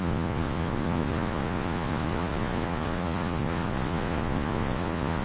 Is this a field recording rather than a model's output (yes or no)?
no